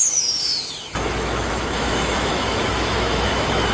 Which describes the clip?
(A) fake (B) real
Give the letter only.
A